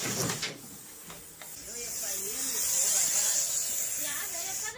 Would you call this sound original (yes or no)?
yes